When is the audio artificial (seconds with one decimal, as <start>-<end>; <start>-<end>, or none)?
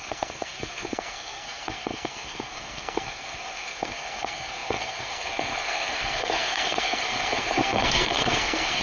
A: 0.0-8.8